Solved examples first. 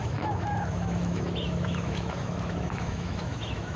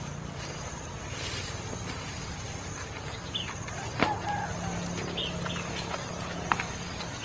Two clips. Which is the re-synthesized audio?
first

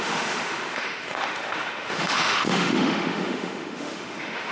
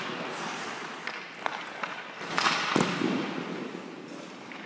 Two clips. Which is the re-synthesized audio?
first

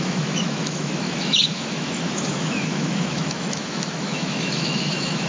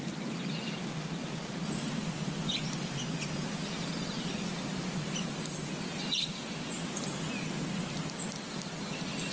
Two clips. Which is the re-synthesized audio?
first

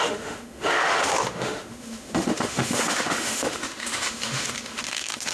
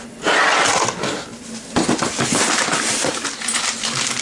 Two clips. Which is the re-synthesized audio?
first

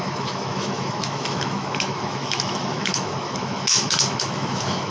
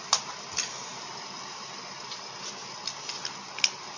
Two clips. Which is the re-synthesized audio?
first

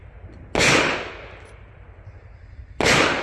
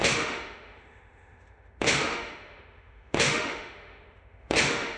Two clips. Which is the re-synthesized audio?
second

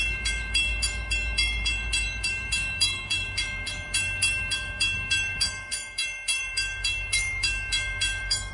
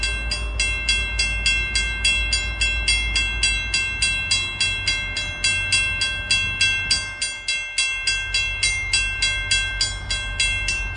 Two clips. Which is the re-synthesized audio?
first